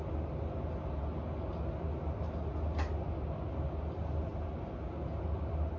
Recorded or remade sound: recorded